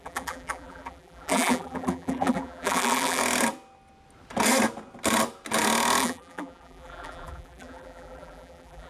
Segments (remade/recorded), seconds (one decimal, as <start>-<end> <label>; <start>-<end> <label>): 0.0-3.2 remade; 3.2-6.0 recorded; 6.0-8.9 remade